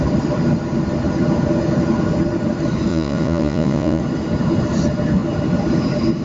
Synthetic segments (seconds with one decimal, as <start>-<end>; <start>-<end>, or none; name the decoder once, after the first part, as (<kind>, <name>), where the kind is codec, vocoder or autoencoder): 2.9-4.0 (vocoder, Vocos)